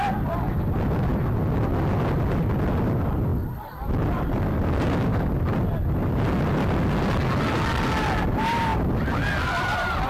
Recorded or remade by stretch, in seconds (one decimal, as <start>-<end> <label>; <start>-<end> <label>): 0.0-3.3 recorded; 3.3-4.3 remade; 4.3-5.1 recorded; 5.1-6.2 remade; 6.2-8.7 recorded; 8.7-10.1 remade